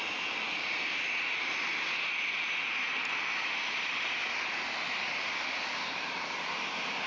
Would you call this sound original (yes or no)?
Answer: yes